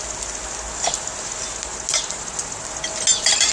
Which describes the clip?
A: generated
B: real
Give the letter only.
B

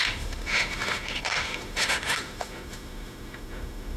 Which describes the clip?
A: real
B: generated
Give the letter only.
B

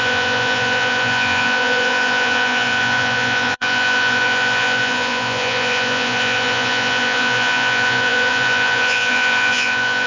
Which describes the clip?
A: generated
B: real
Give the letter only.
A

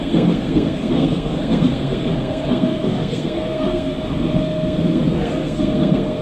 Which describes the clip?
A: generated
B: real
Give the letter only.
A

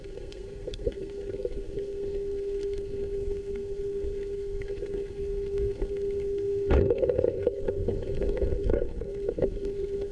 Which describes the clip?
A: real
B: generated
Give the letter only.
B